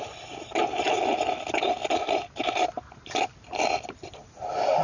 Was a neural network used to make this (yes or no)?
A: no